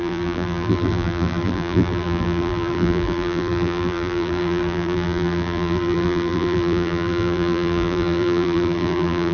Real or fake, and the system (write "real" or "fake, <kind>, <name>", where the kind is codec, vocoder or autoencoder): fake, vocoder, BigVGAN v2